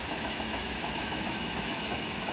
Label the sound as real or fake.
fake